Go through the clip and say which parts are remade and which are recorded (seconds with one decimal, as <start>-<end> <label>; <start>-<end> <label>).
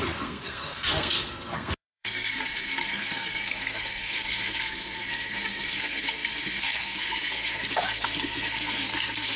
0.0-9.4 remade